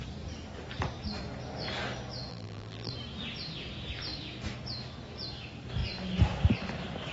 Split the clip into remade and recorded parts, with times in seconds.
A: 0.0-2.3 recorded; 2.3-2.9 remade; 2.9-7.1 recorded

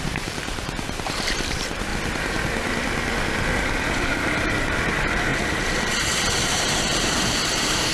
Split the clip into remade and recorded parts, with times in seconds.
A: 0.0-1.9 remade; 1.9-4.1 recorded; 4.1-7.9 remade

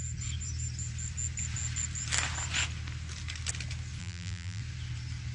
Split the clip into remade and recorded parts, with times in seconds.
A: 0.0-4.0 recorded; 4.0-4.6 remade; 4.6-5.3 recorded

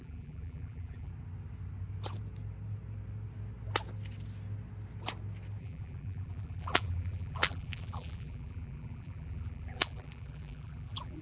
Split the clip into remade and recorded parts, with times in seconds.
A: 0.0-1.1 remade; 1.1-5.6 recorded; 5.6-11.2 remade

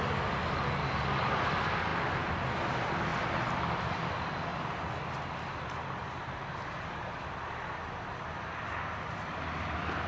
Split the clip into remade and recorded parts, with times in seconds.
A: 0.0-10.1 recorded

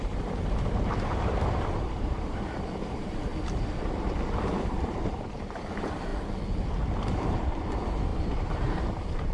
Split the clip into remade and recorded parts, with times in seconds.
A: 0.0-3.3 remade; 3.3-4.6 recorded; 4.6-6.1 remade; 6.1-7.0 recorded; 7.0-9.3 remade